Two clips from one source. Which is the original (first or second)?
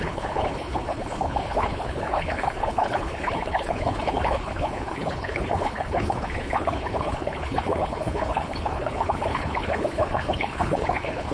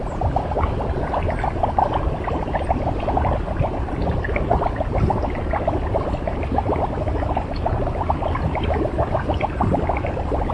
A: second